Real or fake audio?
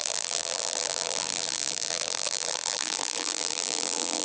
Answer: fake